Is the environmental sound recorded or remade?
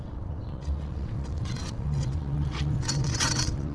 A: remade